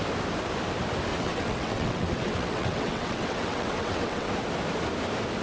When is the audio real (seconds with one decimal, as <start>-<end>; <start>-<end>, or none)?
0.0-1.1; 4.3-5.4